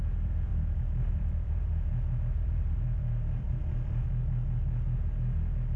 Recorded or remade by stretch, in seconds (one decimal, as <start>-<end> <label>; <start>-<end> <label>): 0.0-0.5 remade; 0.5-1.1 recorded; 1.1-1.7 remade; 1.7-2.3 recorded; 2.3-3.6 remade; 3.6-5.8 recorded